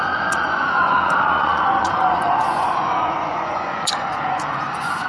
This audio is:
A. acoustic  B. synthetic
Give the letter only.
B